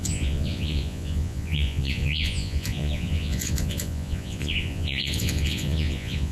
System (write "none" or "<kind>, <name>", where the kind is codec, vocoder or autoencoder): vocoder, Vocos